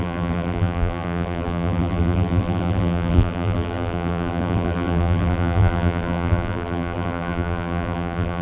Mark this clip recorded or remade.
remade